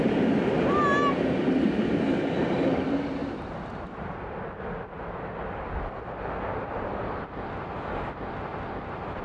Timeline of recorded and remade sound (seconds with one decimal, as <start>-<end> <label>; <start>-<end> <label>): 0.0-9.2 recorded